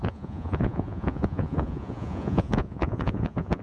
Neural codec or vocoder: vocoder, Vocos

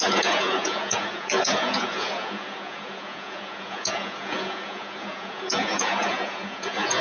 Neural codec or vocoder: vocoder, Vocos